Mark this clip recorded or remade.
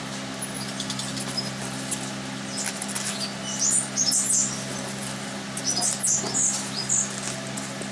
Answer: recorded